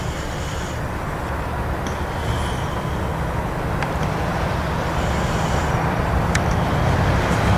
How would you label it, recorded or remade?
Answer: recorded